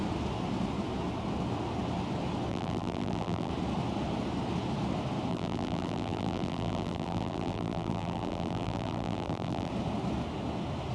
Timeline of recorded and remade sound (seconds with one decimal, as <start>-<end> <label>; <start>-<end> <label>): 0.0-2.5 recorded; 2.5-3.5 remade; 3.5-5.3 recorded; 5.3-9.7 remade; 9.7-10.9 recorded